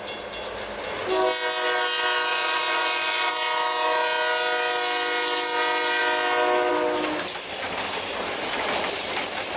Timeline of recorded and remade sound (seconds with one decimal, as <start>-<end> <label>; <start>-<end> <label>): 0.0-2.3 recorded; 2.3-3.3 remade; 3.3-9.6 recorded